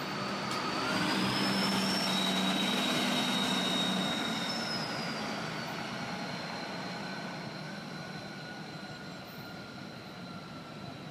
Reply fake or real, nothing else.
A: real